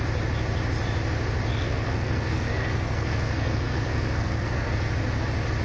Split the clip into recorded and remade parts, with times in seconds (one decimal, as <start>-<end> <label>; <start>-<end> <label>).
0.0-1.5 recorded; 1.5-4.9 remade; 4.9-5.6 recorded